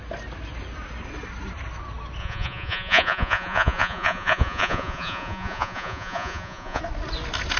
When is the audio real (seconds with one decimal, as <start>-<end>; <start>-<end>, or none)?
0.0-2.2; 6.8-7.6